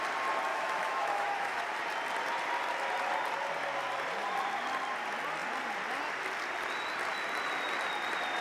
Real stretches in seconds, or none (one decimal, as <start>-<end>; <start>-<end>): 0.0-0.5; 1.7-8.4